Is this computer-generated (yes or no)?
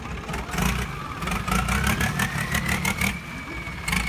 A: no